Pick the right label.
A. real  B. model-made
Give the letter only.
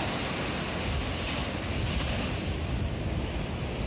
A